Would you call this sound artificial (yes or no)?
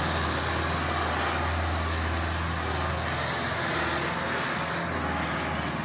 no